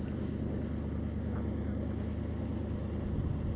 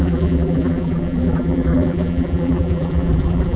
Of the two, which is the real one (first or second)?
first